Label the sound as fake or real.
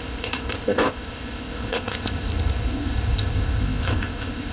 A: fake